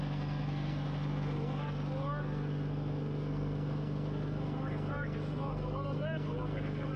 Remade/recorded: remade